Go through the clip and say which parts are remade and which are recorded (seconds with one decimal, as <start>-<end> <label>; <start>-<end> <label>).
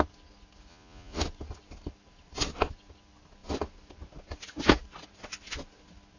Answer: 0.0-0.7 recorded; 0.7-1.2 remade; 1.2-6.2 recorded